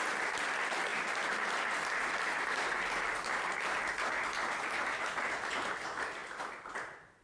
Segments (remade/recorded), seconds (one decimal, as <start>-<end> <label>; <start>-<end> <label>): 0.0-7.2 recorded